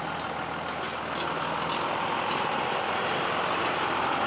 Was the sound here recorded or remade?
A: recorded